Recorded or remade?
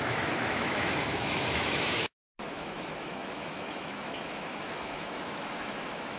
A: remade